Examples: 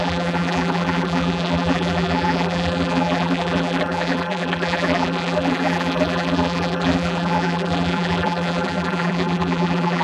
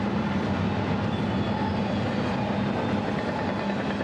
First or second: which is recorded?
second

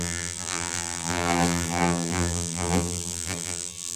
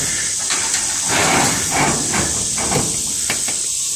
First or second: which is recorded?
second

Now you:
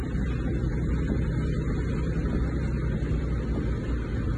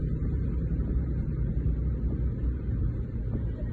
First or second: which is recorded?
first